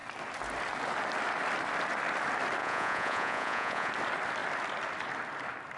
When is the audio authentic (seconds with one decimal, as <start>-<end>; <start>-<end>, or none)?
0.0-2.6; 3.9-5.8